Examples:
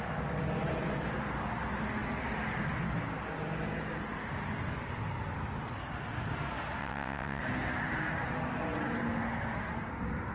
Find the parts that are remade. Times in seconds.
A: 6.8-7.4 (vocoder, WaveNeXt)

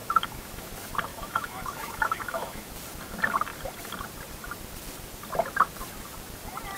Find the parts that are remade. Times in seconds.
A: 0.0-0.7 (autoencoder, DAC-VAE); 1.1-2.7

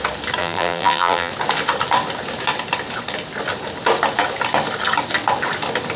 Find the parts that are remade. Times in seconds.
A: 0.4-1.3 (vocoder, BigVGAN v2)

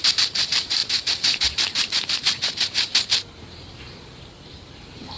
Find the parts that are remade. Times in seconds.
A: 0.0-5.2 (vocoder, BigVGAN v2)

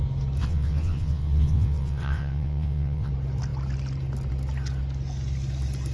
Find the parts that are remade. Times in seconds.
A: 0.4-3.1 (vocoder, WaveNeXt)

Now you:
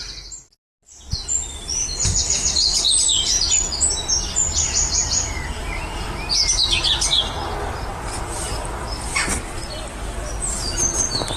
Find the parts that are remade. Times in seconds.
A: 5.6-6.4 (vocoder, BigVGAN v2); 7.9-10.8